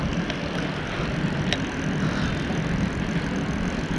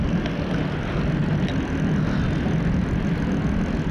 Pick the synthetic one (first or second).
first